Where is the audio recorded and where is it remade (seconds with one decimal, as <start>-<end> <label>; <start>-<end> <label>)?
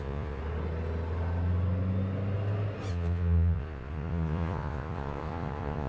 0.0-0.4 remade; 0.4-2.9 recorded; 2.9-5.9 remade